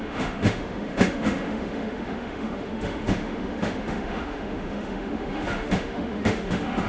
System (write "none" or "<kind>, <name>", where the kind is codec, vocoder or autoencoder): autoencoder, DAC-VAE